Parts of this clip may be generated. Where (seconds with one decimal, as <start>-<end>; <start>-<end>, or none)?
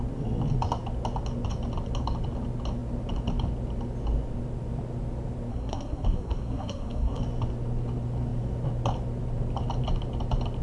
5.5-7.2